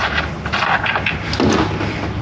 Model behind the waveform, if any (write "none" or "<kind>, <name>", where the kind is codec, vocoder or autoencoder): none